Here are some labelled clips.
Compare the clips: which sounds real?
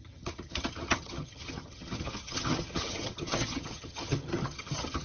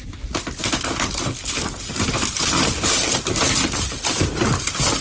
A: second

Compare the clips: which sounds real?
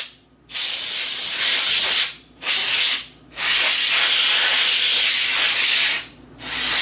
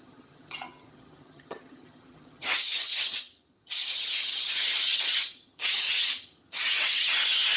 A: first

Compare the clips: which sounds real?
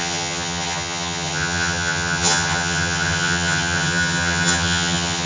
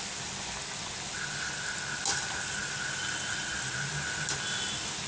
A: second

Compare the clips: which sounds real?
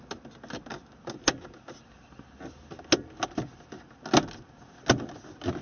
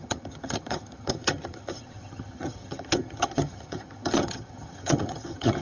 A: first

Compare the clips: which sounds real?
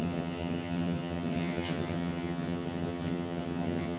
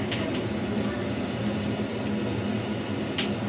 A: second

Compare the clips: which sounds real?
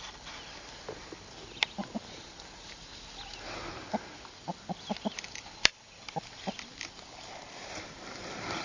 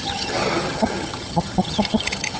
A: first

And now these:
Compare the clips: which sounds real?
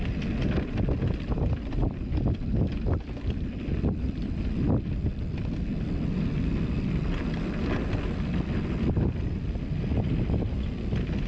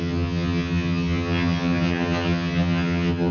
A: first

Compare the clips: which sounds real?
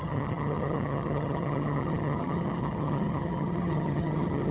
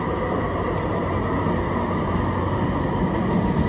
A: second